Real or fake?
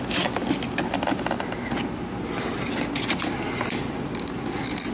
real